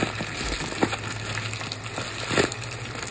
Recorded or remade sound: recorded